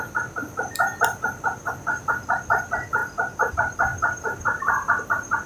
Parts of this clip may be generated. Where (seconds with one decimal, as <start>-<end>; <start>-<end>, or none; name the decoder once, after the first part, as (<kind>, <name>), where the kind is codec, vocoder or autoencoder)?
0.9-2.1 (vocoder, BigVGAN v2); 3.9-5.5

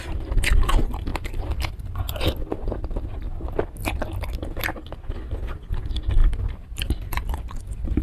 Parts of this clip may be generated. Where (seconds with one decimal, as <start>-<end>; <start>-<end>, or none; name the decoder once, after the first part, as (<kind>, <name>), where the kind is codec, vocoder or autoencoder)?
1.1-2.2 (vocoder, BigVGAN v2); 6.2-7.3